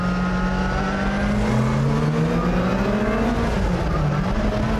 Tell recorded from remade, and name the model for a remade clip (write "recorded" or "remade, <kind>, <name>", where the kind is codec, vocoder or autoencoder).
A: recorded